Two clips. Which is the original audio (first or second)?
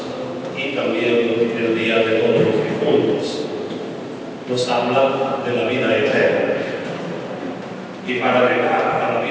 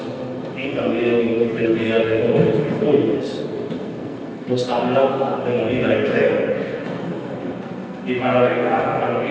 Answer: first